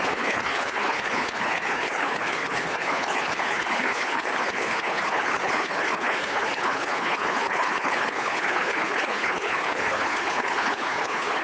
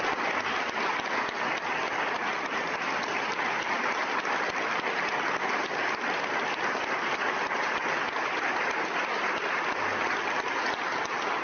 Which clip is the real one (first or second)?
second